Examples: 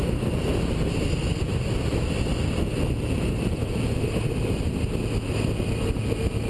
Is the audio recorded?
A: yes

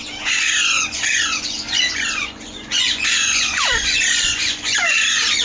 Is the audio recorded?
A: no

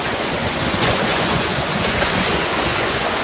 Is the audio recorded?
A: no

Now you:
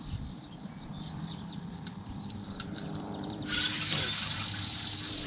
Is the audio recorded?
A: no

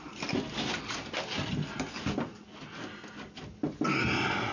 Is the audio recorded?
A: yes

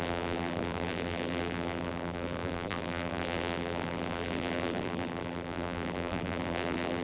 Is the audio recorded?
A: no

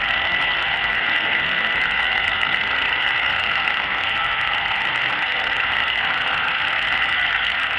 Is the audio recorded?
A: no